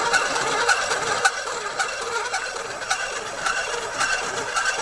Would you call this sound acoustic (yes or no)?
no